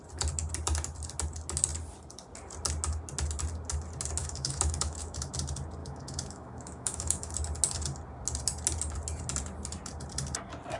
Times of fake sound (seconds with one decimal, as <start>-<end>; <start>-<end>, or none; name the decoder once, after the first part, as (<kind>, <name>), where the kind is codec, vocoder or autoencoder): 4.2-5.3 (autoencoder, DAC-VAE); 5.8-7.3